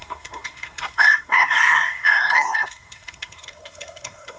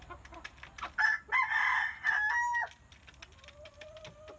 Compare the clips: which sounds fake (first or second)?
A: first